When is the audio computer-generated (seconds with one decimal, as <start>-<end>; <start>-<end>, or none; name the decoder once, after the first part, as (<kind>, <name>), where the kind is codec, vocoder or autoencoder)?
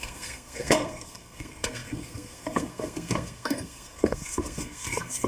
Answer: 0.0-5.3 (codec, SNAC)